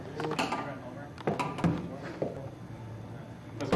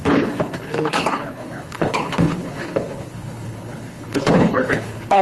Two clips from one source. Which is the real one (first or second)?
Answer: first